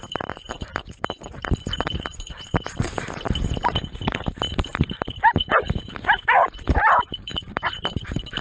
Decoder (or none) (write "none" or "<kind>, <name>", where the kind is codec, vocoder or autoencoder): vocoder, BigVGAN v2